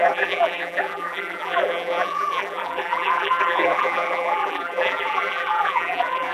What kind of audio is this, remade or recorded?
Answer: remade